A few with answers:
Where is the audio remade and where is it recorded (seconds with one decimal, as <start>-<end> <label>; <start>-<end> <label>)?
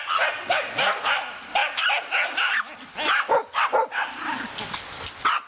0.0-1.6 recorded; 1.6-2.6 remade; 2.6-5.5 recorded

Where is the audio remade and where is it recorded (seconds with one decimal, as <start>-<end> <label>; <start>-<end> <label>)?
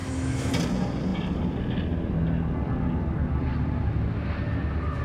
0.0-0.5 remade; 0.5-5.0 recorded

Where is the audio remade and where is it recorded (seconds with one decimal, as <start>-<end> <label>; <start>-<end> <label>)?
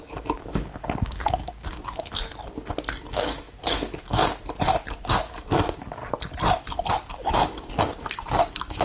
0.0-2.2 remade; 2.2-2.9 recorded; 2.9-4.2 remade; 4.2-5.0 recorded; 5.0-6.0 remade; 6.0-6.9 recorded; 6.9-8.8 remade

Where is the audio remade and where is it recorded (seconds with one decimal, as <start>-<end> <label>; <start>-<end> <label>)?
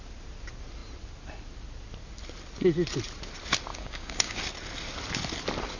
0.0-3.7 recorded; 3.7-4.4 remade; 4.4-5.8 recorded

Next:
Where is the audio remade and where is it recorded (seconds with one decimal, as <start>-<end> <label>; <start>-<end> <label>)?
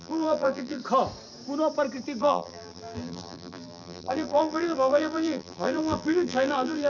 0.0-0.8 remade; 0.8-2.2 recorded; 2.2-6.9 remade